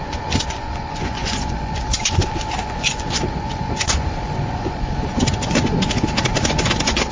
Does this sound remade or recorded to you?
remade